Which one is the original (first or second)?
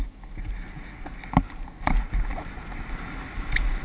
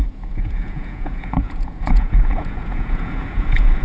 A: first